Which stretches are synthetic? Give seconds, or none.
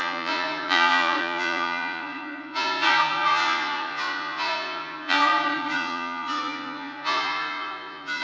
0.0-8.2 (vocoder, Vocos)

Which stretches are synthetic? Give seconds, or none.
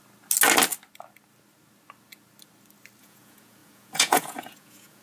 3.0-5.0 (vocoder, Vocos)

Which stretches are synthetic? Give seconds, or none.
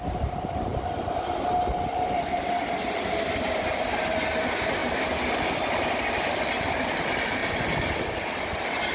none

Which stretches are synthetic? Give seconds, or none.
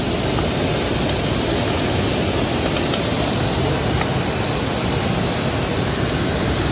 none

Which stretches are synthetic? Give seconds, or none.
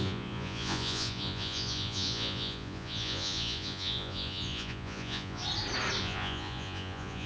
0.0-5.4 (vocoder, Vocos); 6.0-7.3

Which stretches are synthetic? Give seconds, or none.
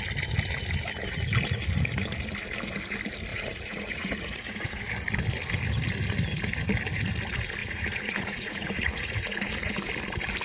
3.3-4.8 (vocoder, Vocos); 7.6-9.9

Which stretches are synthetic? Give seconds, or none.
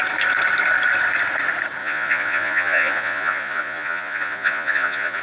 1.8-5.2 (vocoder, Vocos)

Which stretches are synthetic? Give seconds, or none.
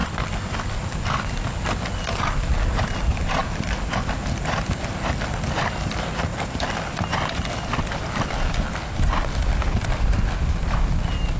none